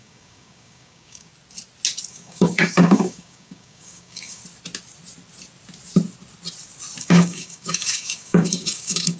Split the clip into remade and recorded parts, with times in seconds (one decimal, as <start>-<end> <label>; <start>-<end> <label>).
0.0-1.3 remade; 1.3-2.1 recorded; 2.1-4.4 remade; 4.4-7.0 recorded; 7.0-9.2 remade